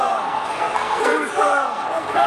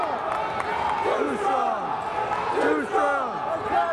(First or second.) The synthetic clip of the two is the first